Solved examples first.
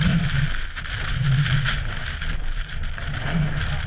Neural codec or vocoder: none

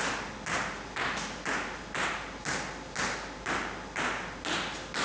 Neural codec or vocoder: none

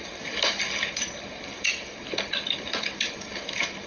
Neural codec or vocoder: none